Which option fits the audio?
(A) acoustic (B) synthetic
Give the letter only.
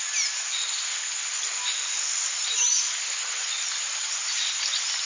A